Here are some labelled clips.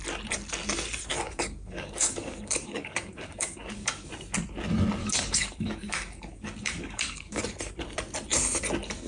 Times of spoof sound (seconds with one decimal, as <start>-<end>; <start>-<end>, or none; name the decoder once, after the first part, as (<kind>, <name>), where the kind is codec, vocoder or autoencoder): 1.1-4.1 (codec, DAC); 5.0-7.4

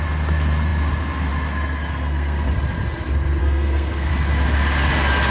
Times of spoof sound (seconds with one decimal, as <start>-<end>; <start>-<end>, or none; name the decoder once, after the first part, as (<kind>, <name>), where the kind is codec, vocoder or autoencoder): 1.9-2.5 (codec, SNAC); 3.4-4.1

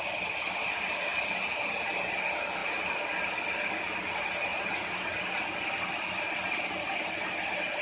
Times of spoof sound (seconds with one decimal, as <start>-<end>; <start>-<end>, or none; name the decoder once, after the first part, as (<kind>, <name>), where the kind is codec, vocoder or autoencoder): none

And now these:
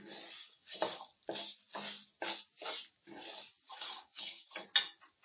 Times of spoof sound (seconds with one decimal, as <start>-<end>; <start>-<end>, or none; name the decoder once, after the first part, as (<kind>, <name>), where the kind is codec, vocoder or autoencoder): 0.4-1.1 (codec, DAC); 3.7-4.5

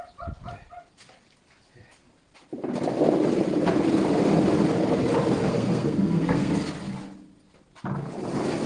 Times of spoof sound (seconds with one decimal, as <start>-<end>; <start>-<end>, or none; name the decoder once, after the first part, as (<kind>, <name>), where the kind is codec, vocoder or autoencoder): 5.4-6.5 (codec, SNAC)